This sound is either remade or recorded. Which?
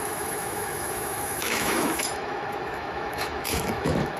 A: remade